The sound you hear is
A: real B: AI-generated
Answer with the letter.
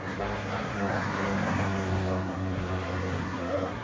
B